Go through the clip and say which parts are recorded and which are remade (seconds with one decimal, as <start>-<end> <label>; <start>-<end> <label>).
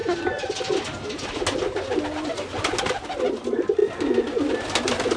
0.0-5.2 recorded